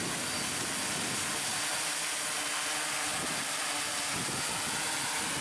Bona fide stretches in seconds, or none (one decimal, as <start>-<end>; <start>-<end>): 0.0-5.4